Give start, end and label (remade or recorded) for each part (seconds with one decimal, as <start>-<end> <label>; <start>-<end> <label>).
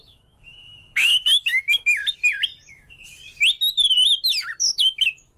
0.0-2.0 remade; 2.0-2.7 recorded; 2.7-3.2 remade; 3.2-4.6 recorded; 4.6-5.4 remade